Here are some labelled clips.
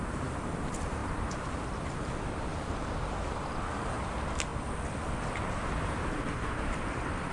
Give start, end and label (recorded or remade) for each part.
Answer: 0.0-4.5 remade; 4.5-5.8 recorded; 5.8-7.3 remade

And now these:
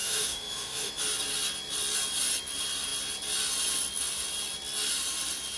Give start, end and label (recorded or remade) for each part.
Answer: 0.0-0.9 remade; 0.9-5.6 recorded

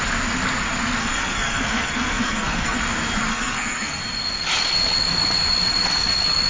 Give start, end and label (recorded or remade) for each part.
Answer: 0.0-1.0 recorded; 1.0-2.8 remade; 2.8-3.3 recorded; 3.3-4.0 remade; 4.0-6.5 recorded

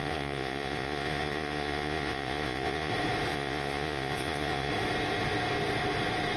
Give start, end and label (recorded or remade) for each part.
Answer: 0.0-2.9 remade; 2.9-3.3 recorded; 3.3-4.7 remade; 4.7-6.4 recorded

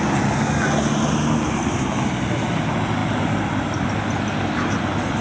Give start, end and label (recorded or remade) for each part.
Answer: 0.0-5.2 recorded

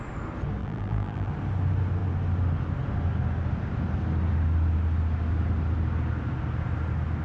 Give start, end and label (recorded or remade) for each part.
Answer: 0.0-0.6 recorded; 0.6-1.3 remade; 1.3-7.2 recorded

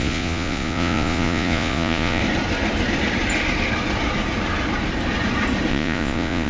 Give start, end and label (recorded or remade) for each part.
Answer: 0.0-2.2 remade; 2.2-5.7 recorded; 5.7-6.5 remade

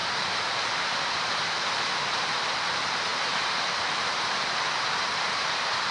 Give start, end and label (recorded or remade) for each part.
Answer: 0.0-5.9 remade